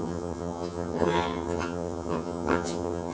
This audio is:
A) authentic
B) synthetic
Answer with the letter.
B